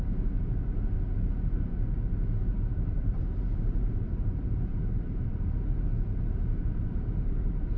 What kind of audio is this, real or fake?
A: fake